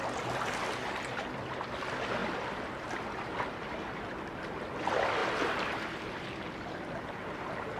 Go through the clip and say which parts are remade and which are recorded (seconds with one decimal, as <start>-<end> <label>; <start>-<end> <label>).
0.0-7.8 recorded